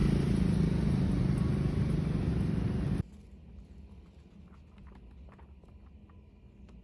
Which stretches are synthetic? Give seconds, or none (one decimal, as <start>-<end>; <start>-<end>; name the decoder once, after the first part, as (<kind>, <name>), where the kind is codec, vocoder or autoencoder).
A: none